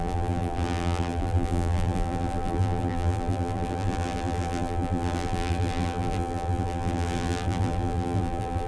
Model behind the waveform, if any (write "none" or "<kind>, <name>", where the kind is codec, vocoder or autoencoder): vocoder, BigVGAN v2